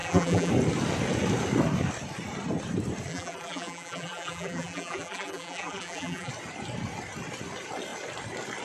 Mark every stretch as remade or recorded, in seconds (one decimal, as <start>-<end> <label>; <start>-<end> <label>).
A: 0.0-0.5 remade; 0.5-3.1 recorded; 3.1-6.3 remade; 6.3-8.6 recorded